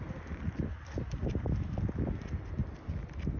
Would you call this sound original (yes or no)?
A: yes